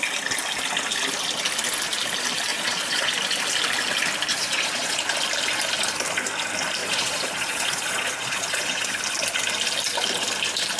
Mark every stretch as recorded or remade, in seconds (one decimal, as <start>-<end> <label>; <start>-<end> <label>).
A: 0.0-2.5 recorded; 2.5-3.1 remade; 3.1-4.3 recorded; 4.3-5.0 remade; 5.0-6.8 recorded; 6.8-9.0 remade; 9.0-10.8 recorded